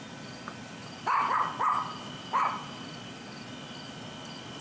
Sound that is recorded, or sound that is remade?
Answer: recorded